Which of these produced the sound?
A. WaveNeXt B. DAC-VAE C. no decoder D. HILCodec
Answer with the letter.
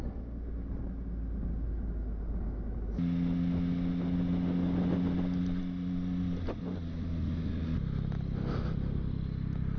C